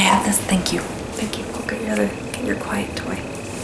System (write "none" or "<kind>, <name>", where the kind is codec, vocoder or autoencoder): none